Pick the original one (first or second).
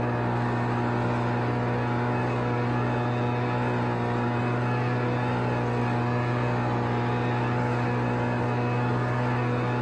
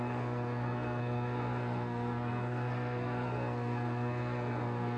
first